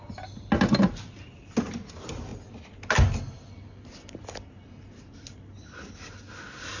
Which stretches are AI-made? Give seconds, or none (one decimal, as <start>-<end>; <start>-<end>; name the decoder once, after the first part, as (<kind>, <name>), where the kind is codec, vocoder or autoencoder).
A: none